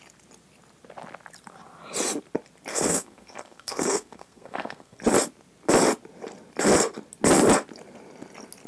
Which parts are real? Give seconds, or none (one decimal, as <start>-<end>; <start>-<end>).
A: 0.0-2.7; 5.0-8.7